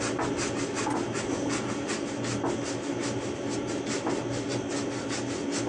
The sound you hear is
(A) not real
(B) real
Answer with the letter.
B